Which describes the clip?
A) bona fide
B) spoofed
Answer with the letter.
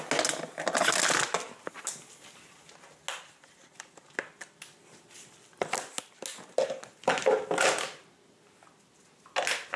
A